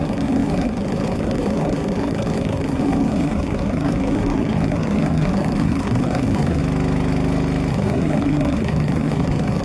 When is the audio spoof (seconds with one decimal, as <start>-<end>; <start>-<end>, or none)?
0.0-6.6; 7.7-9.6